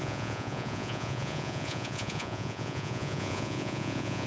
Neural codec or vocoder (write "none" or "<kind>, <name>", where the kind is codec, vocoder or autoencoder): vocoder, Vocos